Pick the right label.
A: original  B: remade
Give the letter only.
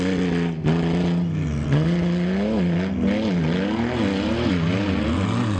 A